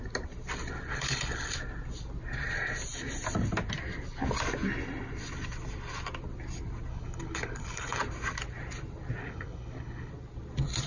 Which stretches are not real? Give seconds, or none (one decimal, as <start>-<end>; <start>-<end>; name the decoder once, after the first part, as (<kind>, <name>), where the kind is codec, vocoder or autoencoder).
0.9-1.5 (codec, HILCodec); 6.9-8.0; 9.2-10.1